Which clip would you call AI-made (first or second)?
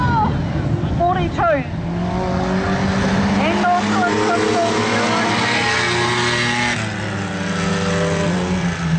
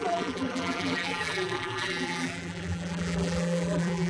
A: second